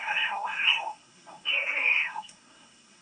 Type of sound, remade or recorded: remade